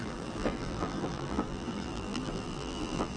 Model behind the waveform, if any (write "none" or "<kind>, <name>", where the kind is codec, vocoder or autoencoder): vocoder, BigVGAN v2